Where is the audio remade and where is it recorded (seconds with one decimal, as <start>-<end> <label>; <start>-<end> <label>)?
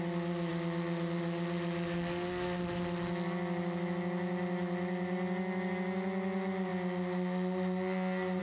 0.0-8.4 recorded